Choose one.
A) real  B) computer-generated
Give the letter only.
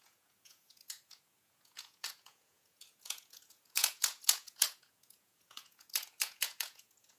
B